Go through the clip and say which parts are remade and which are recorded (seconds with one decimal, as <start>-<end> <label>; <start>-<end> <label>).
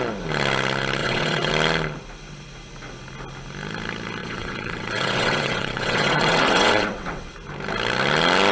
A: 0.0-1.0 recorded; 1.0-1.5 remade; 1.5-4.2 recorded; 4.2-7.3 remade; 7.3-8.5 recorded